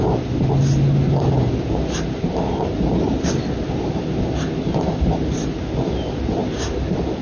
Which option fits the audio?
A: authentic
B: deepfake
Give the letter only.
A